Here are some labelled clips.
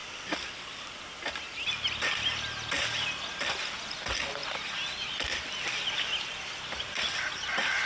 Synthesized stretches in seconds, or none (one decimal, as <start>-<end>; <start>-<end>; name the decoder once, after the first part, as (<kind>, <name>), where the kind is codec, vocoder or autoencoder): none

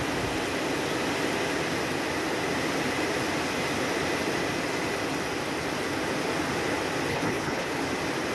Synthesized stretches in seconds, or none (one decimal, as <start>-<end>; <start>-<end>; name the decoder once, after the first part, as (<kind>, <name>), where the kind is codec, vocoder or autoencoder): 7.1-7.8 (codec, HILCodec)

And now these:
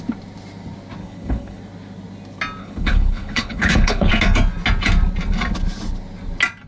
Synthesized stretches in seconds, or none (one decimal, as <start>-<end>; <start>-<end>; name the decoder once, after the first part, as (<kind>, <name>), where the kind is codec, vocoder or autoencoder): 1.0-1.6 (codec, HILCodec); 2.6-4.1